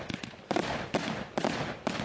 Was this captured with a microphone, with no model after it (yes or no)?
yes